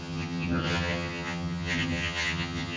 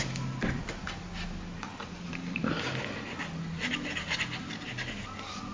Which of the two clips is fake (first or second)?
first